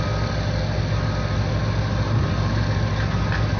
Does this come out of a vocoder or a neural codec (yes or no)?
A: no